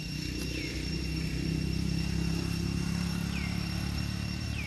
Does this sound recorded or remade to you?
remade